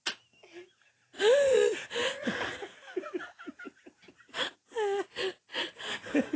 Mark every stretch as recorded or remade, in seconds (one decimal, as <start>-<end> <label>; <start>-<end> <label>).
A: 0.0-6.4 recorded

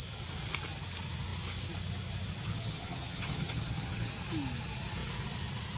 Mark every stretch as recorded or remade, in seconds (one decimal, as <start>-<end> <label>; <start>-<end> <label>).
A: 0.0-2.5 recorded; 2.5-4.1 remade; 4.1-5.8 recorded

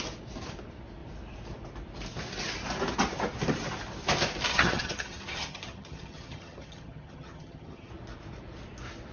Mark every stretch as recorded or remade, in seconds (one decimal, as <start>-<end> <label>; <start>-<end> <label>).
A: 0.0-4.5 recorded; 4.5-7.9 remade; 7.9-9.1 recorded

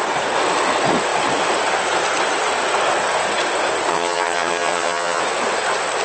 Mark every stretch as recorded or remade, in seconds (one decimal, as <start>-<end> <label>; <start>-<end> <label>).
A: 0.0-3.9 recorded; 3.9-5.2 remade; 5.2-6.0 recorded

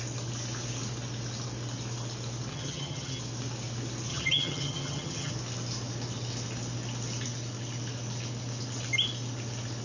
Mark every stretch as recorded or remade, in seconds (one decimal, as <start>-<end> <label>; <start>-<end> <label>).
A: 0.0-2.5 recorded; 2.5-3.2 remade; 3.2-4.1 recorded; 4.1-5.3 remade; 5.3-9.8 recorded